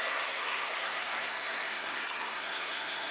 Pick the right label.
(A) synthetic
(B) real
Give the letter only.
A